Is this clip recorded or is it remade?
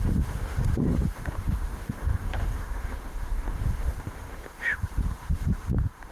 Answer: remade